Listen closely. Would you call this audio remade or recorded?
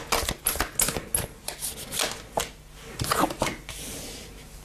recorded